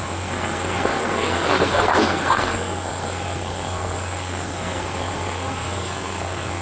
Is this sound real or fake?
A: fake